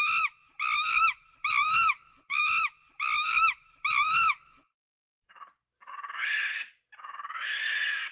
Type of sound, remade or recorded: remade